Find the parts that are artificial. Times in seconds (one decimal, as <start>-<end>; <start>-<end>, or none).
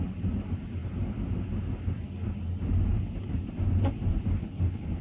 4.4-5.0